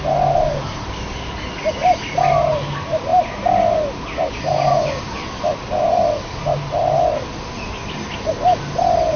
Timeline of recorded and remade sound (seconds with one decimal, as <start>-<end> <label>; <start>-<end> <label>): 0.0-9.2 recorded